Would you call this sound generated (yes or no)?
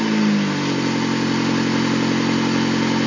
no